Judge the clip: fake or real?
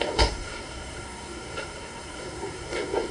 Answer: fake